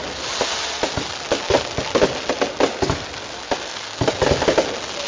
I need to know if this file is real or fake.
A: real